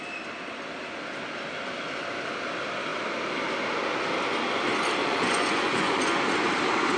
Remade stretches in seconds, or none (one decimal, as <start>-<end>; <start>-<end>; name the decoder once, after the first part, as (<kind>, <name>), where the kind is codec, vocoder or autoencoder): 5.0-6.2 (vocoder, Vocos)